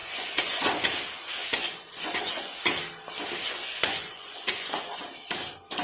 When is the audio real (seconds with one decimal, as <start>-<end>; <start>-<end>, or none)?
0.7-1.4; 2.6-3.4; 5.0-5.8